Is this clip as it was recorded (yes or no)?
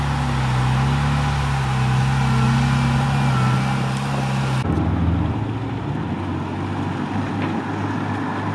yes